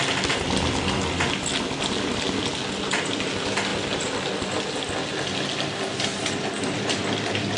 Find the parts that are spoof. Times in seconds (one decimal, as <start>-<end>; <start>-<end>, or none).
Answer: none

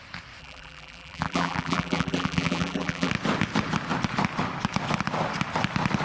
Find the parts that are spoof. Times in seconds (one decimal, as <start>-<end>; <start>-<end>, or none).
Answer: 0.4-3.1

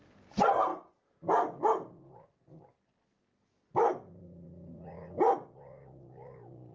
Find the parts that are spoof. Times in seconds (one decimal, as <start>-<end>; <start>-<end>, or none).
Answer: none

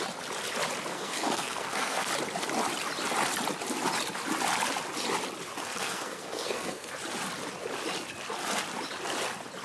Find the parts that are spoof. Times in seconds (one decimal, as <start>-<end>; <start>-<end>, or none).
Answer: 0.9-2.1; 5.6-6.9

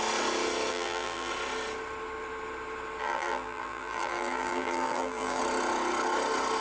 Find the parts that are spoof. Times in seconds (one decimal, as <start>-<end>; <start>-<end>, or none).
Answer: 0.7-1.3; 3.0-5.4

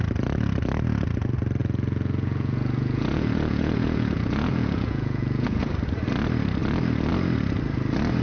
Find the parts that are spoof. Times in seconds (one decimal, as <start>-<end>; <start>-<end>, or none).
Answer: 1.6-5.7